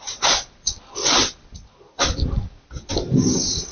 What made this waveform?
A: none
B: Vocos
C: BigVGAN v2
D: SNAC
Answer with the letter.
A